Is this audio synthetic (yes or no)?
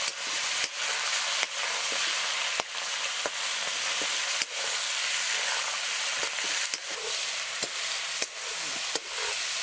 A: no